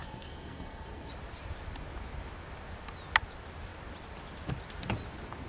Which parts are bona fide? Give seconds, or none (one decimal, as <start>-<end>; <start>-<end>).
1.1-5.5